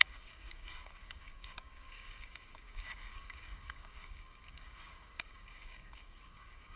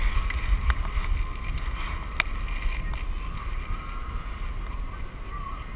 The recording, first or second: second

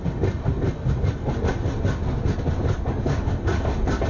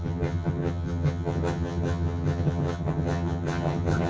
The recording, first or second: first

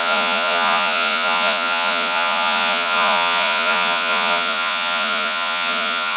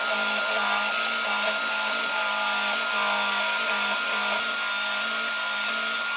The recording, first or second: second